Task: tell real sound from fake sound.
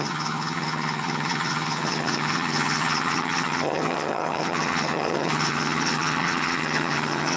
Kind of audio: fake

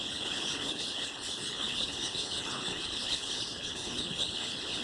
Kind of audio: fake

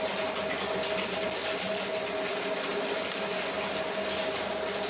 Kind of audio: real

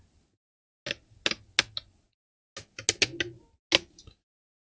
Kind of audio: real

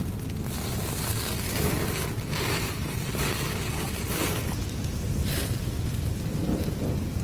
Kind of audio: real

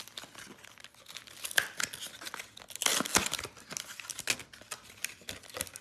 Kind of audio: real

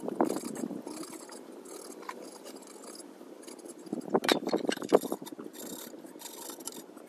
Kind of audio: real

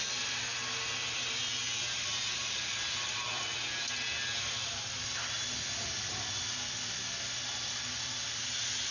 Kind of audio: real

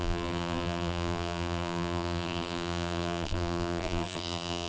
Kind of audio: fake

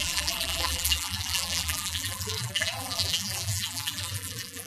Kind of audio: fake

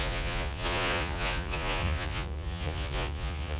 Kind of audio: fake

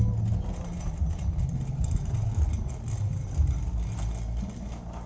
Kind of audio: real